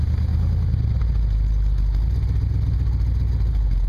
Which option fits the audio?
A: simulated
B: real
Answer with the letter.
B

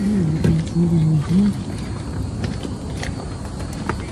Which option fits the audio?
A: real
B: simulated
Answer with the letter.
A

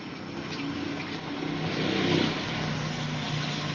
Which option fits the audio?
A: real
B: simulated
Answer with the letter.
A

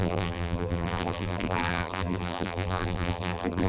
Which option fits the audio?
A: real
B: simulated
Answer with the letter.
B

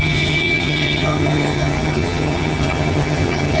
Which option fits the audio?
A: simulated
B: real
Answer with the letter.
A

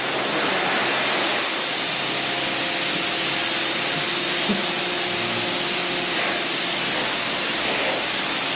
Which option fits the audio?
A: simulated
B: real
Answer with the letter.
B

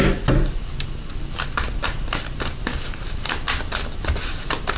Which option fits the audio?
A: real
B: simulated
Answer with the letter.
A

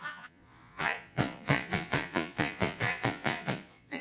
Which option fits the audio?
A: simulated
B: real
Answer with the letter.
A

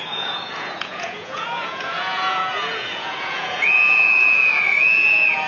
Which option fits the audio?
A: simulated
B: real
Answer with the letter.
A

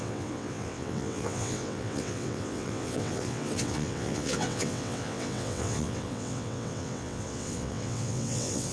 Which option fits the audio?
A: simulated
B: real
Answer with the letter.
A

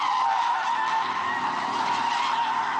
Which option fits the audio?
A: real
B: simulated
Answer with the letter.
A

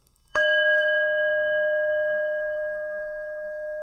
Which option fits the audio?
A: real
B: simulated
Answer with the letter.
B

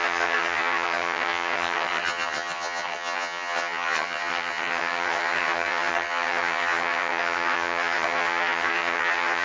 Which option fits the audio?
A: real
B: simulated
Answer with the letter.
B